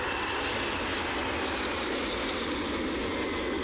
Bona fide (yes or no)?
yes